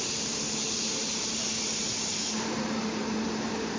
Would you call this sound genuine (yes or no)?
no